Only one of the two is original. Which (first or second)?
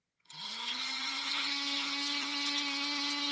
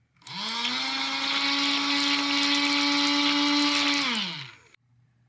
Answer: second